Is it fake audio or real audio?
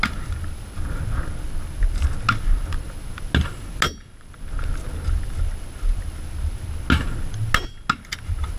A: real